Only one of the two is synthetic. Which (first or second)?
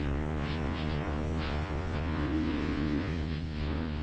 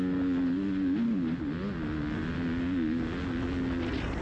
first